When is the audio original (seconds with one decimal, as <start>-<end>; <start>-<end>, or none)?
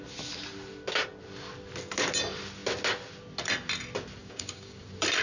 0.0-4.2; 4.8-5.2